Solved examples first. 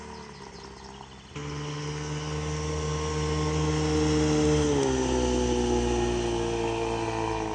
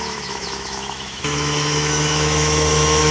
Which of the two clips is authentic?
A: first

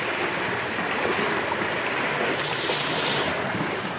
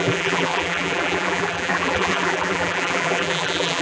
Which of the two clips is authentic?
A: first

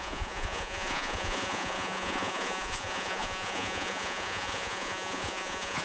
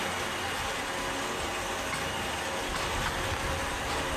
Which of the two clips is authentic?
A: second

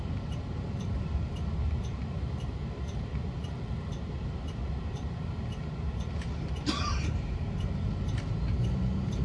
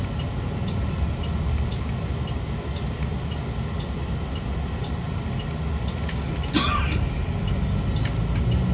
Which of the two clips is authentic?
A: second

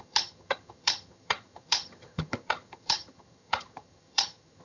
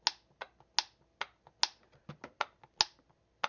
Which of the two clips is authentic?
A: second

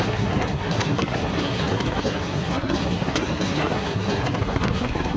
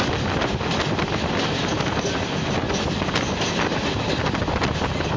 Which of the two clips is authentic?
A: second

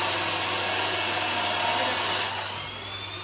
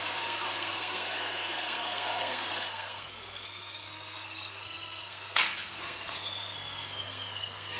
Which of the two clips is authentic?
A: first